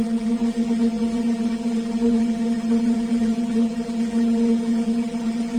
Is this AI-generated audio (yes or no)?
yes